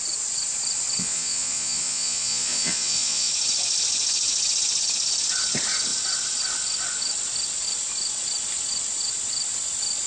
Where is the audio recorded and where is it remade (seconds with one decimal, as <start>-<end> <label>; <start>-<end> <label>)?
0.0-1.0 recorded; 1.0-3.3 remade; 3.3-10.1 recorded